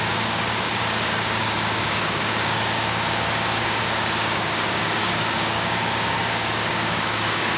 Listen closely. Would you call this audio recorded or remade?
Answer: remade